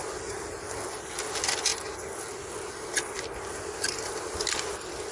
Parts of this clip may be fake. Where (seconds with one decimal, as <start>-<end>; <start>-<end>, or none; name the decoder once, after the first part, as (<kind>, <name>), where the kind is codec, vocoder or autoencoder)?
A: none

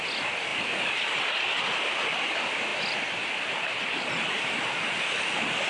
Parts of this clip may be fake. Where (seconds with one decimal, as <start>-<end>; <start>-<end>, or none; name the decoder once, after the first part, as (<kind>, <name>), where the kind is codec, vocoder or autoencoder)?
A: none

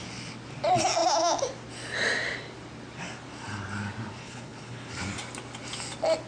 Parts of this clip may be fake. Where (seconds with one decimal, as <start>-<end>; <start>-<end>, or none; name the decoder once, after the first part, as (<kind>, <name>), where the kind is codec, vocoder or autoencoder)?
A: 4.2-4.9 (codec, HILCodec)

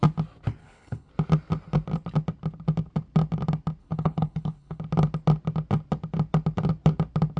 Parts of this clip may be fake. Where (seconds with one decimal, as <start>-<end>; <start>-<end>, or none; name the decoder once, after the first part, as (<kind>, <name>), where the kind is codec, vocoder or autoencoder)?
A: 0.6-1.1 (codec, HILCodec); 3.8-4.8

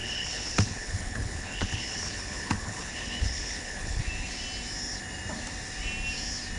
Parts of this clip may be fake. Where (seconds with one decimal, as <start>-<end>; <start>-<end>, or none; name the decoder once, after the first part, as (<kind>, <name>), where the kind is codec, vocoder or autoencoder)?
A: 0.0-4.0 (codec, HILCodec)